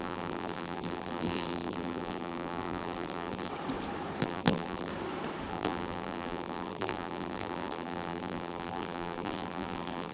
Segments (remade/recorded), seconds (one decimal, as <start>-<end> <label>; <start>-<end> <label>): 0.0-3.5 remade; 3.5-4.2 recorded; 4.2-4.9 remade; 4.9-5.5 recorded; 5.5-10.1 remade